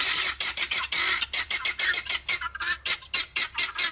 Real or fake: real